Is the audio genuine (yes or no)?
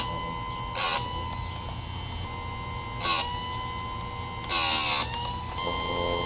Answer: yes